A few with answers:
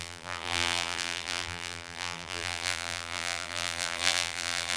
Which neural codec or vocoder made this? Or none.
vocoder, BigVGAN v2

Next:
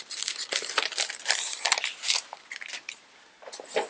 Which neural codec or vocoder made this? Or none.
vocoder, BigVGAN v2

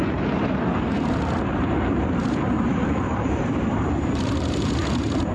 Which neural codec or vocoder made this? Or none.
vocoder, BigVGAN v2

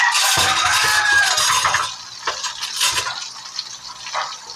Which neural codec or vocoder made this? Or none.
none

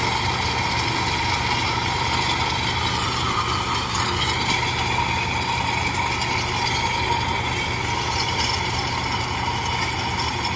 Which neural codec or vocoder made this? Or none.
none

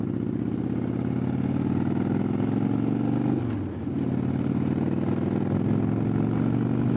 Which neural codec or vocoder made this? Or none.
none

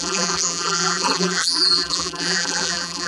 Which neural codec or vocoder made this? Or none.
vocoder, BigVGAN v2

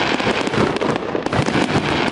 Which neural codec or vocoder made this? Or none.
none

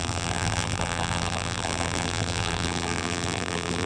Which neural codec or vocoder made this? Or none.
vocoder, BigVGAN v2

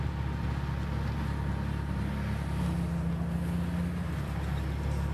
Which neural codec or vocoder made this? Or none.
none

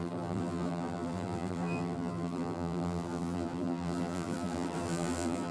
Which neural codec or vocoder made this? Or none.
vocoder, BigVGAN v2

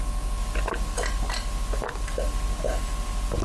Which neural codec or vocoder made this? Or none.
none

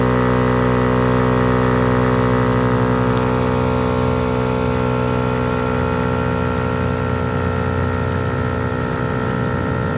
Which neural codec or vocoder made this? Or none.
none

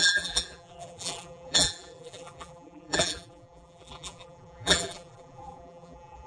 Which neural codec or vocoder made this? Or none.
vocoder, BigVGAN v2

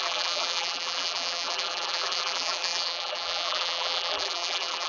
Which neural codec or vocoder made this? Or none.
vocoder, BigVGAN v2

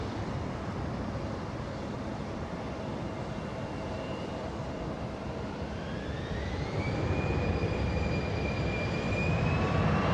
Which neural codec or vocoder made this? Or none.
vocoder, BigVGAN v2